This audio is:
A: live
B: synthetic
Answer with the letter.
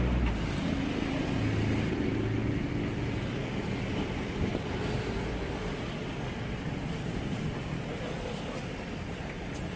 A